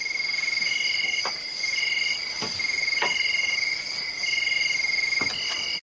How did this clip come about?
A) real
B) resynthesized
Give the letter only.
A